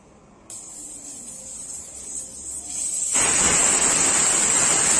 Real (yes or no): yes